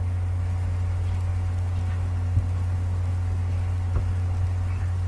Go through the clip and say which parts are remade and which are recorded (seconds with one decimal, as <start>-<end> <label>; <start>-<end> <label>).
0.0-5.1 recorded